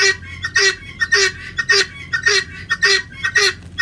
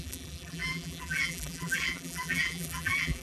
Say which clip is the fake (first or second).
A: second